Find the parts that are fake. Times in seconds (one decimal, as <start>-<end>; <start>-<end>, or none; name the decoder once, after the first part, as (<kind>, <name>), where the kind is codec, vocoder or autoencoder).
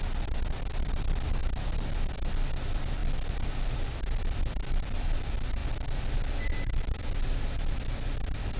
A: 3.0-3.8 (vocoder, BigVGAN v2); 5.6-6.7